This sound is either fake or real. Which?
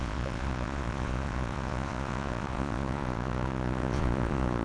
fake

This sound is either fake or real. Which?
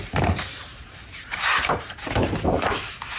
fake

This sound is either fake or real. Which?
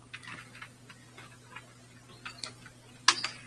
real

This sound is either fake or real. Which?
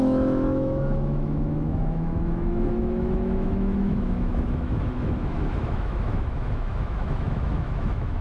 fake